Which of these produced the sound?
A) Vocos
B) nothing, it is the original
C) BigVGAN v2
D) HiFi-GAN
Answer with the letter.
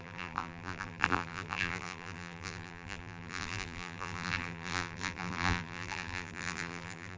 C